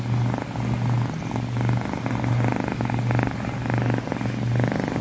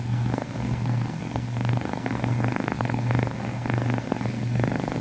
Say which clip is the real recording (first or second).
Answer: first